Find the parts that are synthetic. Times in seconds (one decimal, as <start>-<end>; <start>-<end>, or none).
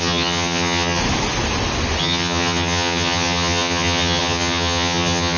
0.0-1.0; 2.0-5.4